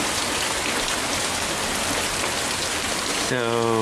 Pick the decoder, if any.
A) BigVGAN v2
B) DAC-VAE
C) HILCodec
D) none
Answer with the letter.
D